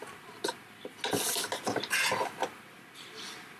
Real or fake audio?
real